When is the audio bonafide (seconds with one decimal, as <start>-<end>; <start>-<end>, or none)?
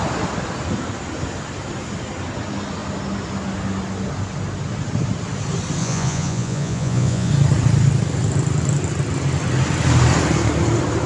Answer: 0.0-5.8; 7.3-11.1